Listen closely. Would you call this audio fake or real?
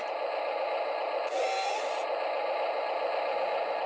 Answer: real